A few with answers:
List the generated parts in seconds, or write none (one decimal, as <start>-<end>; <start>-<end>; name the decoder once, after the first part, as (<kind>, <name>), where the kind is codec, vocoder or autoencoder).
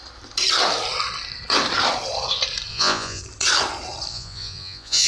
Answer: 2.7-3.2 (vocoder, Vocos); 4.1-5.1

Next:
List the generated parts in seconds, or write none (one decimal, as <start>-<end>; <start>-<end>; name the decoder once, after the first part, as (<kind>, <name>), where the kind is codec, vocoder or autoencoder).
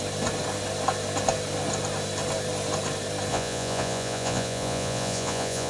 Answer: 3.3-5.7 (vocoder, Vocos)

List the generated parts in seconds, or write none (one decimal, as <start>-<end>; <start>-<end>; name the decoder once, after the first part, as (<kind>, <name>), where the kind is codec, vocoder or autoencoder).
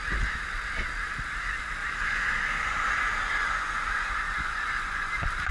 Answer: 1.8-5.1 (vocoder, Vocos)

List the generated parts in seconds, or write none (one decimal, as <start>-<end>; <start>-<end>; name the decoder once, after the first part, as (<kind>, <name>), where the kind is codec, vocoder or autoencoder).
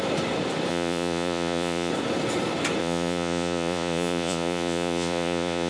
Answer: 0.7-1.9 (vocoder, Vocos); 2.8-5.7